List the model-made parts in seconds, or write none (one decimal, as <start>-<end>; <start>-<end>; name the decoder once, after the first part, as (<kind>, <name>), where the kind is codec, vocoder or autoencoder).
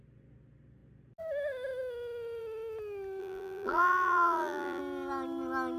3.2-4.8 (vocoder, BigVGAN v2)